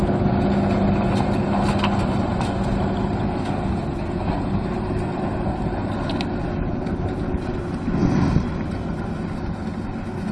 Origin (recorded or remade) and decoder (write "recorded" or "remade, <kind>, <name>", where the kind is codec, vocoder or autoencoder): recorded